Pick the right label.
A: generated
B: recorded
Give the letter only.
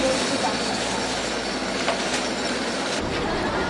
B